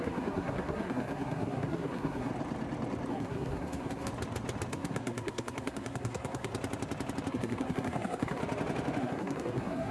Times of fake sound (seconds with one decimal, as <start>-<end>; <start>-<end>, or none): 0.0-2.3; 3.1-4.1; 4.7-6.5; 7.3-8.4; 9.0-9.9